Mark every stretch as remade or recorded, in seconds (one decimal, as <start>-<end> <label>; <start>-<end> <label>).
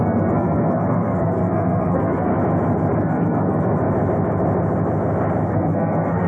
0.0-2.3 remade; 2.3-3.0 recorded; 3.0-3.8 remade; 3.8-5.5 recorded; 5.5-6.3 remade